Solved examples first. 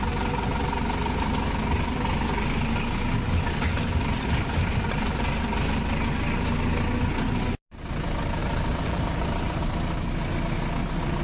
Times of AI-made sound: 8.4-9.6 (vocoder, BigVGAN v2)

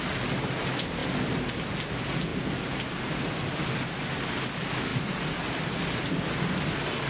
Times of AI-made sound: 4.9-5.6 (vocoder, BigVGAN v2)

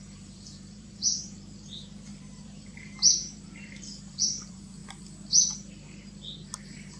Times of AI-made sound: 0.0-4.8 (vocoder, BigVGAN v2); 6.6-7.0

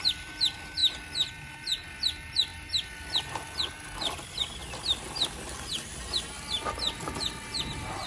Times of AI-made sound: none

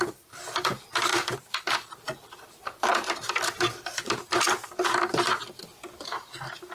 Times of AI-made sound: 0.0-6.7 (vocoder, BigVGAN v2)

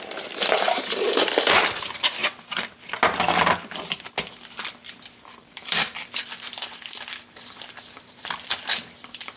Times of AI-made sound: 0.0-2.2 (vocoder, BigVGAN v2); 5.3-9.4

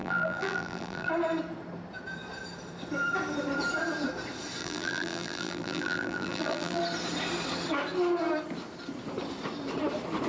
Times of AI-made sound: 0.0-1.1 (vocoder, BigVGAN v2); 4.6-6.8

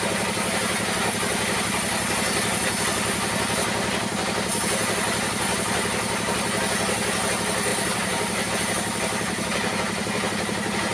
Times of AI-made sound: 7.7-8.5 (vocoder, BigVGAN v2)